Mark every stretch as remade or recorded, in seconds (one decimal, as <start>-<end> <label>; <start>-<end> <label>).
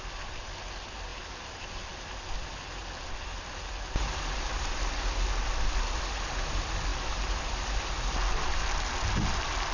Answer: 0.0-9.7 recorded